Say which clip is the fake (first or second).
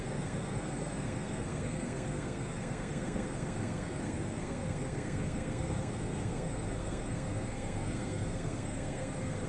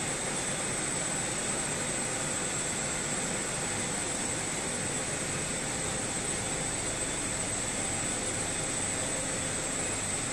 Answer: first